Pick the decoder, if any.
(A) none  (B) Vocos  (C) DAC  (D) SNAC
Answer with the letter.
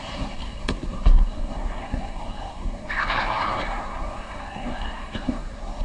D